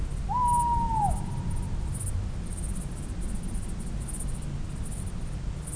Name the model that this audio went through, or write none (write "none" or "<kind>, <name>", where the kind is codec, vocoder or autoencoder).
none